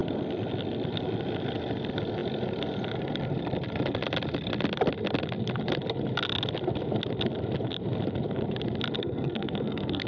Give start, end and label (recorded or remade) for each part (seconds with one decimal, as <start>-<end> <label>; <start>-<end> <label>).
0.0-9.0 recorded; 9.0-10.1 remade